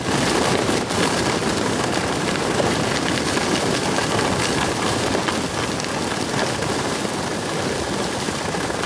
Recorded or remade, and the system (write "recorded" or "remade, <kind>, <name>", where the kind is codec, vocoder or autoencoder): recorded